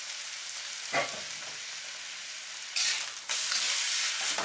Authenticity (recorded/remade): recorded